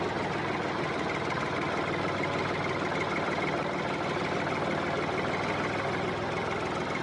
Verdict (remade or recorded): recorded